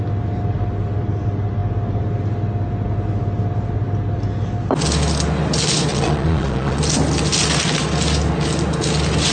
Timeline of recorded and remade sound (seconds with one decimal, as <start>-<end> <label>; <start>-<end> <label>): 0.0-5.9 recorded; 5.9-6.8 remade; 6.8-9.3 recorded